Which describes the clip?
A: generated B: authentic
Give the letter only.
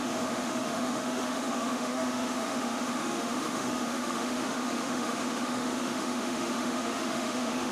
A